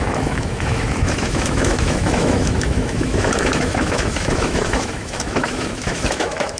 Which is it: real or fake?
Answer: fake